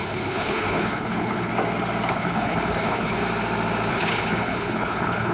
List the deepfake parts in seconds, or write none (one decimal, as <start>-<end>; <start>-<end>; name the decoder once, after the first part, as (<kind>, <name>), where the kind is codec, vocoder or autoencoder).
0.0-1.5 (codec, HILCodec); 2.1-3.2; 3.9-5.3